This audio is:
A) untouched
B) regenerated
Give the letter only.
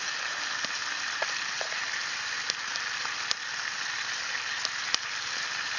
A